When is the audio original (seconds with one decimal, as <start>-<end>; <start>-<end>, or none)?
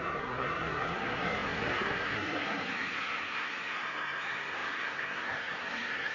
none